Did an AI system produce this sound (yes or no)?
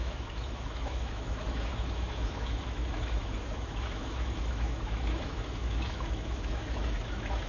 yes